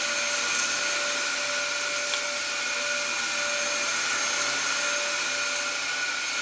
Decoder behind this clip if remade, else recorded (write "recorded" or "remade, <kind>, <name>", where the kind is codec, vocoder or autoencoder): recorded